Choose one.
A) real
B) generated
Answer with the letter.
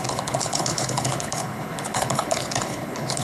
B